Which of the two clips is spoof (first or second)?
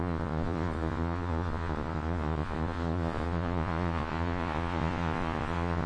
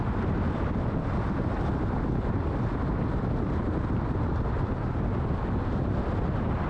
first